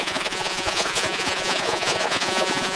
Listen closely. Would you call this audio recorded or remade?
remade